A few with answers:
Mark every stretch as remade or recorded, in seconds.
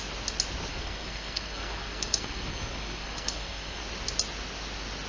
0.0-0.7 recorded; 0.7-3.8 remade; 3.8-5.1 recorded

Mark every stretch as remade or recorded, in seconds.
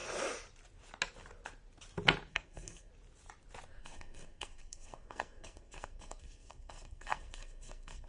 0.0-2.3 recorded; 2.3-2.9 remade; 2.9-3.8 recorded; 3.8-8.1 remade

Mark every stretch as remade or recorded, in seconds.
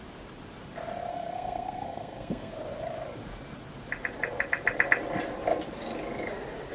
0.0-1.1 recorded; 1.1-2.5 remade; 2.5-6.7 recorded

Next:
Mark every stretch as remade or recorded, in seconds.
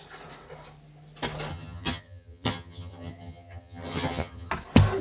0.0-1.5 recorded; 1.5-4.5 remade; 4.5-5.0 recorded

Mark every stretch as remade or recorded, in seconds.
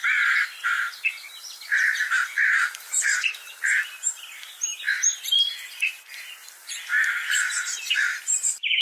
0.0-1.2 recorded; 1.2-8.8 remade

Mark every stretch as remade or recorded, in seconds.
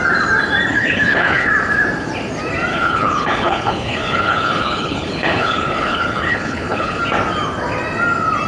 0.0-0.7 recorded; 0.7-1.5 remade; 1.5-2.7 recorded; 2.7-7.0 remade; 7.0-8.5 recorded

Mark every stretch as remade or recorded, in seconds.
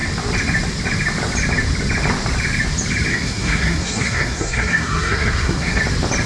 0.0-3.1 recorded; 3.1-5.8 remade; 5.8-6.3 recorded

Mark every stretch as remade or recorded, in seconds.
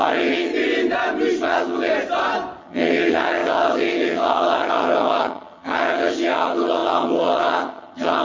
0.0-0.5 remade; 0.5-1.4 recorded; 1.4-1.9 remade; 1.9-2.6 recorded; 2.6-8.2 remade